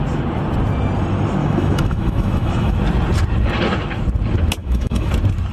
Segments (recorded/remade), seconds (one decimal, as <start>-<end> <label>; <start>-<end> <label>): 0.0-1.4 recorded; 1.4-2.8 remade; 2.8-4.6 recorded; 4.6-5.1 remade; 5.1-5.5 recorded